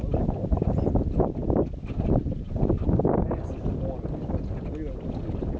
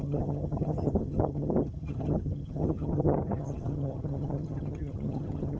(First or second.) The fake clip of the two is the second